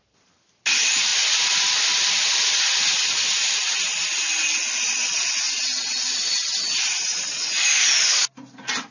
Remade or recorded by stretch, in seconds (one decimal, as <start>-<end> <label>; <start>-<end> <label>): 0.0-8.9 recorded